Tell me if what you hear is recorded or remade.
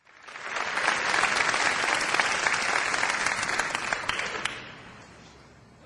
recorded